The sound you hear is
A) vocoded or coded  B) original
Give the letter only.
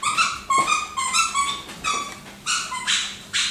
B